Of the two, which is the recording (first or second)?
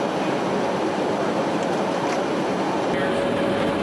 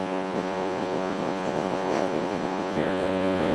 first